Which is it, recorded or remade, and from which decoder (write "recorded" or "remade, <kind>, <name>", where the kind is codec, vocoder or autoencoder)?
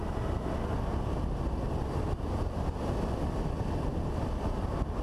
recorded